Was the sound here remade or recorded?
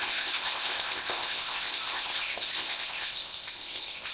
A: remade